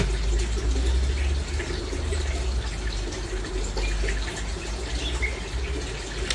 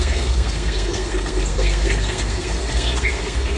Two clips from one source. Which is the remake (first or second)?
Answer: second